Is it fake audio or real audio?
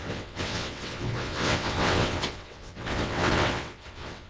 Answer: fake